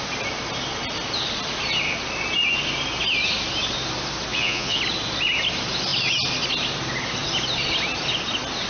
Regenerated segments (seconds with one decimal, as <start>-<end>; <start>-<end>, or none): 4.3-4.8